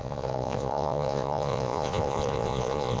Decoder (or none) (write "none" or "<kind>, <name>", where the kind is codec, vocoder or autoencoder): vocoder, Vocos